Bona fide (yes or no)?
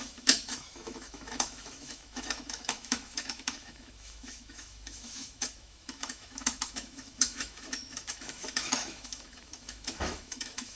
no